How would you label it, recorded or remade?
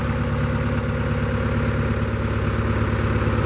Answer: recorded